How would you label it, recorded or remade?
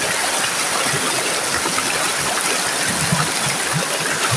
recorded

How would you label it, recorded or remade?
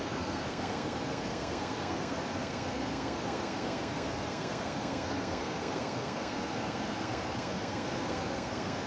remade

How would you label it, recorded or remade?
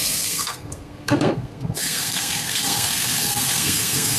remade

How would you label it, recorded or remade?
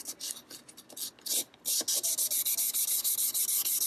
recorded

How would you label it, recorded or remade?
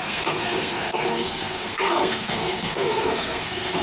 remade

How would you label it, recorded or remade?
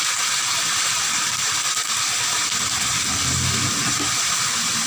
recorded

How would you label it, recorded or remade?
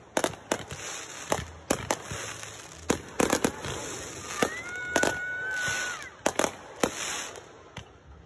recorded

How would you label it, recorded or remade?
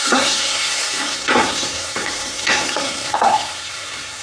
remade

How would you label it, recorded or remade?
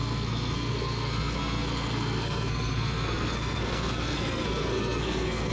remade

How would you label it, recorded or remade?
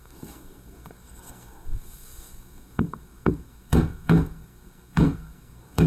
remade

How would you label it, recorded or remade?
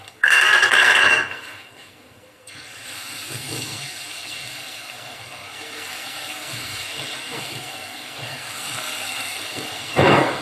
remade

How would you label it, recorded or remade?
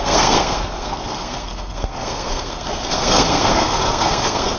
remade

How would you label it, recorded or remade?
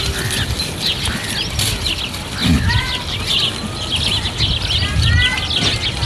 recorded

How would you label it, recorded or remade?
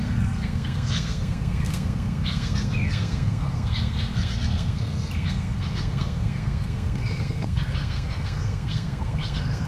remade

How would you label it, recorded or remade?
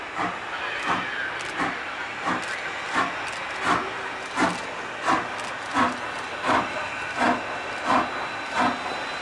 recorded